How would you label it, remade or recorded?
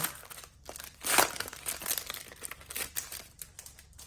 recorded